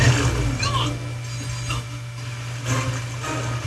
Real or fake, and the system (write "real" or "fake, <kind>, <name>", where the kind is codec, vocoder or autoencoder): real